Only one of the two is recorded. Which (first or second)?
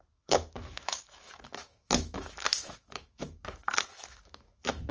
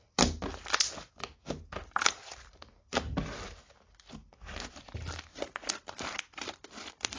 second